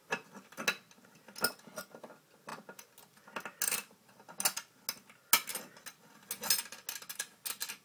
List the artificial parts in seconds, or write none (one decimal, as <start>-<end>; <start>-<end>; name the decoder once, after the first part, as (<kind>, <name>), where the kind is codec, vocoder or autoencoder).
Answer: none

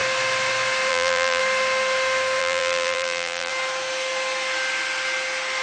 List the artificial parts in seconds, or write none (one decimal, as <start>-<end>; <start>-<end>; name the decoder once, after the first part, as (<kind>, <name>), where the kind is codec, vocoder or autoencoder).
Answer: 0.9-1.4 (vocoder, BigVGAN v2); 2.4-3.5

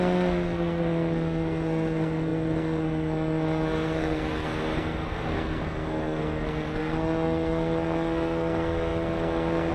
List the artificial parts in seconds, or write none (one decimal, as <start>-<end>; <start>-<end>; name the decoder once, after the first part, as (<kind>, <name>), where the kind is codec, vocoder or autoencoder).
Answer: 0.0-9.7 (codec, SNAC)

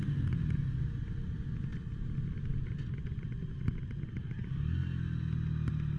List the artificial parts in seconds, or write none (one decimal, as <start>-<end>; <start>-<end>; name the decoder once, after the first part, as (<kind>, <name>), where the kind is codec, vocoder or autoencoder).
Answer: none

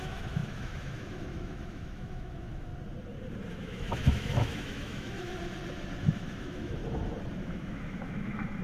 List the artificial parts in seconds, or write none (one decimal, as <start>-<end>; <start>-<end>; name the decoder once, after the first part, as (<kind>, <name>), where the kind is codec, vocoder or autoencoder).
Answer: 0.0-2.7 (autoencoder, DAC-VAE); 3.5-5.3; 6.0-6.8; 7.4-8.6

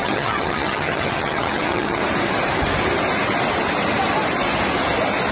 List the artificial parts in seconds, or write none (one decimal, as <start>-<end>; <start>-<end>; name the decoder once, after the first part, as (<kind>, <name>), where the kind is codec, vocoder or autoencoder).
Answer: 0.0-2.0 (vocoder, HiFi-GAN)

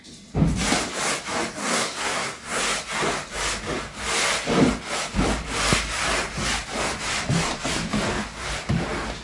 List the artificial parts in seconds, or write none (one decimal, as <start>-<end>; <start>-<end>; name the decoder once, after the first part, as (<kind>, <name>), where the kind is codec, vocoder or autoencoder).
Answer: 1.6-2.6 (codec, SNAC)

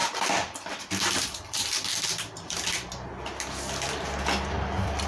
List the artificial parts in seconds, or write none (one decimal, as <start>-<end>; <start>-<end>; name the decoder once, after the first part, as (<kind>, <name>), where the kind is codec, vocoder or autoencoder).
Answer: 0.0-3.1 (vocoder, BigVGAN v2)